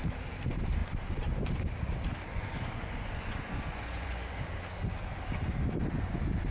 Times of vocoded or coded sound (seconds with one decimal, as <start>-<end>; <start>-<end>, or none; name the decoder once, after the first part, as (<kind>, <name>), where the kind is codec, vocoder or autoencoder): 2.3-4.4 (vocoder, Vocos)